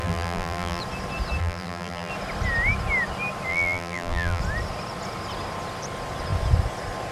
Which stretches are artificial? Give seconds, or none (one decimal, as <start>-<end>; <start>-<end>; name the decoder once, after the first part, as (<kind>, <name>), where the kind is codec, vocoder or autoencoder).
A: 0.0-0.8 (vocoder, BigVGAN v2); 1.4-2.1; 3.5-4.4